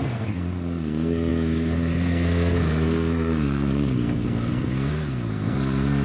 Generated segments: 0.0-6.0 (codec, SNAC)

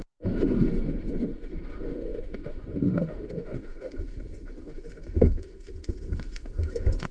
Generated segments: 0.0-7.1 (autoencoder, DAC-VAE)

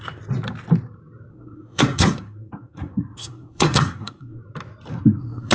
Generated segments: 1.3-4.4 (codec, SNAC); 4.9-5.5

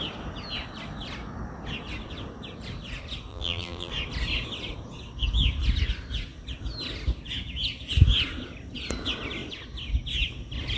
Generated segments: 3.3-3.9 (vocoder, BigVGAN v2)

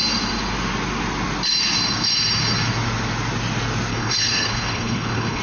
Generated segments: 3.9-5.4 (codec, HILCodec)

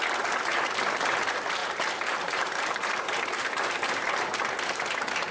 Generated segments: 1.6-4.8 (vocoder, BigVGAN v2)

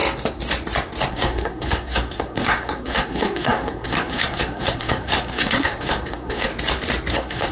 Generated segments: 1.1-6.5 (codec, SNAC); 7.1-7.5

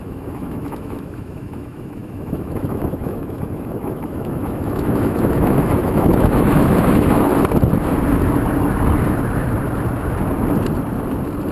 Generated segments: 0.0-7.3 (autoencoder, DAC-VAE)